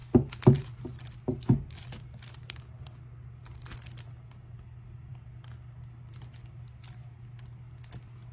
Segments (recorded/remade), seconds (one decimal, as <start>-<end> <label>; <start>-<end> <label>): 0.0-8.3 recorded